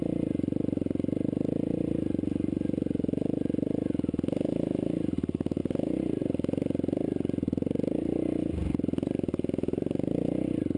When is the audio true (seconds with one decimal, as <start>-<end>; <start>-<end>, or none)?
0.0-10.8